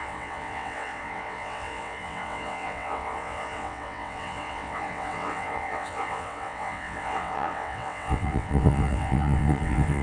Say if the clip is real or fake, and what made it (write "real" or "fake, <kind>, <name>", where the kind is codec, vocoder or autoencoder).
fake, vocoder, WaveNeXt